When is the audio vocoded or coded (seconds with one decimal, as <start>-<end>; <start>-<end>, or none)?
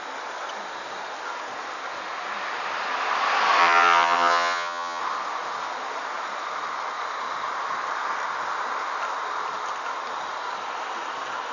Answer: 3.6-5.0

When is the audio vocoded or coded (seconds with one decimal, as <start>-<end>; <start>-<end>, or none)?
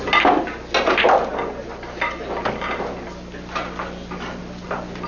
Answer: none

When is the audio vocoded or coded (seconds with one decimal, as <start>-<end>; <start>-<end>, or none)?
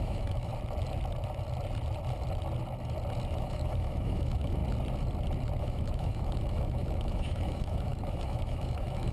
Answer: 0.0-0.5; 3.4-4.6; 5.6-9.1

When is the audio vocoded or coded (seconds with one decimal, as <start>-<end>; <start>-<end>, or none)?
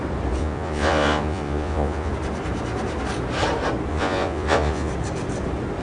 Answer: 0.4-2.1; 3.9-4.9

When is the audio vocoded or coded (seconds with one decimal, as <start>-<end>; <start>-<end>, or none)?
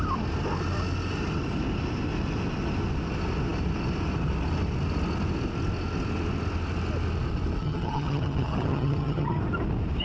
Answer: 7.6-9.4